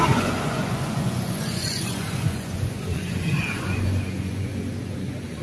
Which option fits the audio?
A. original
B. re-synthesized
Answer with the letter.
B